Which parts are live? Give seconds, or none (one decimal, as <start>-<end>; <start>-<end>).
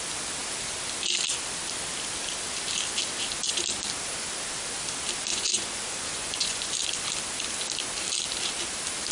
0.0-5.3; 6.7-9.1